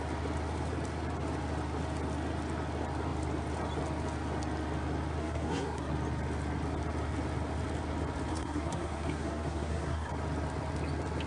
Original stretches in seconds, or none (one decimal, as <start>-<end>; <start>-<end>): 0.0-5.2; 5.9-8.3; 10.1-11.3